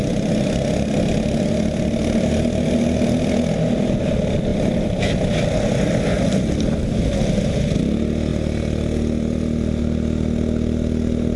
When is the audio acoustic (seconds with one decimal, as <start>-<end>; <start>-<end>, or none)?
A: 0.0-4.5; 5.4-6.1; 7.0-8.3; 9.8-11.4